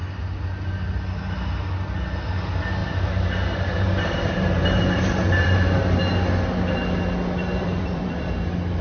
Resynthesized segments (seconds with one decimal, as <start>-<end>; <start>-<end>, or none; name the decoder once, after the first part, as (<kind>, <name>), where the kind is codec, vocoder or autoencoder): 2.8-6.0 (vocoder, BigVGAN v2); 7.4-8.1